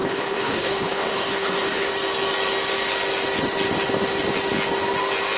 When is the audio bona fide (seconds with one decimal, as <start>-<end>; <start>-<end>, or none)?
1.9-5.4